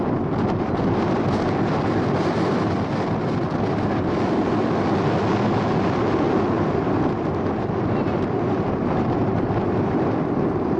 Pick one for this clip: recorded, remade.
recorded